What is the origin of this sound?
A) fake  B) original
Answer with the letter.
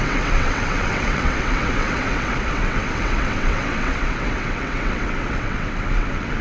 A